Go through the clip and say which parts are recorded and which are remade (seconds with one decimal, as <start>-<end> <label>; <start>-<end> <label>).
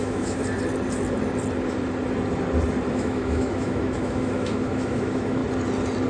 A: 0.0-0.4 remade; 0.4-2.9 recorded; 2.9-5.4 remade; 5.4-6.1 recorded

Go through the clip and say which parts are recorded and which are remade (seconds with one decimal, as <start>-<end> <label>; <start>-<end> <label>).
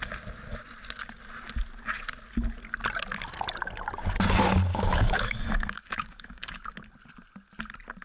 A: 0.0-4.7 recorded; 4.7-6.7 remade; 6.7-8.0 recorded